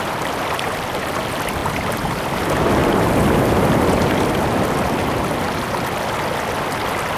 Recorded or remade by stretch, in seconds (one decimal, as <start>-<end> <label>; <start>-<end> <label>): 0.0-1.6 recorded; 1.6-2.4 remade; 2.4-7.2 recorded